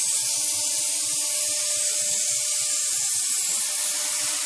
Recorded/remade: recorded